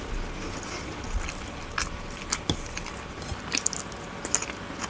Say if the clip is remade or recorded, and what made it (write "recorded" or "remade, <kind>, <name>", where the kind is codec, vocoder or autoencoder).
recorded